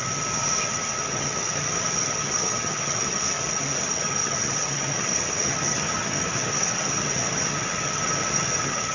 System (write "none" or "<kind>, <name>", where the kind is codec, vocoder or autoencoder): vocoder, HiFi-GAN